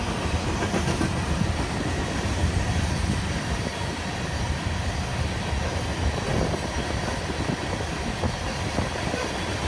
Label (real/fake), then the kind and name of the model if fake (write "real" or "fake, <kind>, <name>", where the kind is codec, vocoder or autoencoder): real